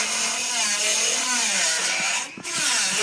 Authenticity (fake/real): real